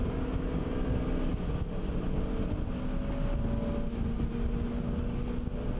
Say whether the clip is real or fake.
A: real